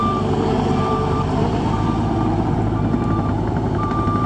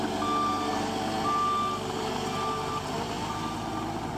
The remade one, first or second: first